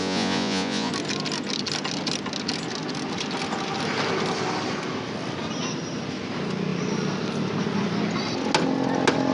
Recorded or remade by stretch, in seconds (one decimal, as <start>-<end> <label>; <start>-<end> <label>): 0.0-0.9 remade; 0.9-9.3 recorded